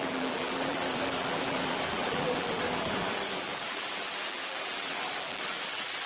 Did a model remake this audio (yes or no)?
yes